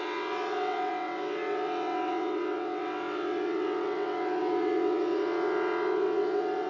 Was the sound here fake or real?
fake